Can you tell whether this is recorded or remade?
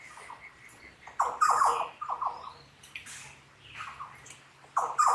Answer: recorded